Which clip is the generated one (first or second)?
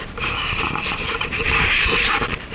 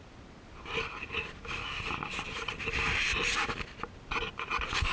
first